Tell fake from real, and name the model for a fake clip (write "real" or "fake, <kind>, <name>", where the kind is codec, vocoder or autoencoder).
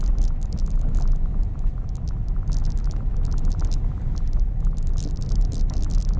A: real